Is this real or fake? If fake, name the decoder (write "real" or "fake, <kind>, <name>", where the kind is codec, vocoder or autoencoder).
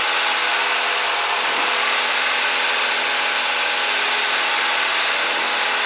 real